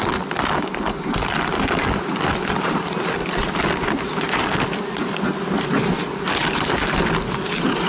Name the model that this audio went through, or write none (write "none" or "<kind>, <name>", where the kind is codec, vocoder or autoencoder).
none